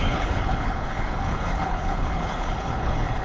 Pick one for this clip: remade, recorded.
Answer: remade